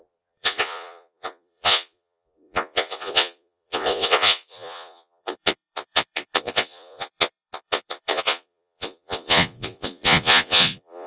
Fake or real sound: fake